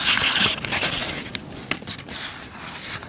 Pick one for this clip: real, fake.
real